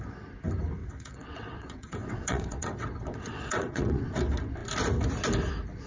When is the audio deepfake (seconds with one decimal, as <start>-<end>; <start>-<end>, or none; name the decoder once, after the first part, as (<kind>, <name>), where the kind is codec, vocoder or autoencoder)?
0.8-4.1 (vocoder, WaveNeXt)